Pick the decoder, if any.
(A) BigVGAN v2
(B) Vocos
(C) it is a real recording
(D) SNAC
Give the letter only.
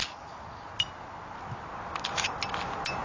C